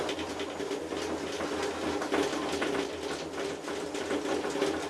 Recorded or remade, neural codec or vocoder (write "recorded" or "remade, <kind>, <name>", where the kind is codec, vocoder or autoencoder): recorded